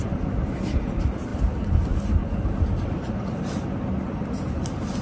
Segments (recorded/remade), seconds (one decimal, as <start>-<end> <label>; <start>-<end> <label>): 0.0-5.0 recorded